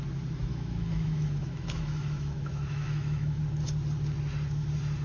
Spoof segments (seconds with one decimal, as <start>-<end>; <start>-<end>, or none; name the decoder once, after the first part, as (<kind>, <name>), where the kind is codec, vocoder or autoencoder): 0.5-3.4 (autoencoder, DAC-VAE)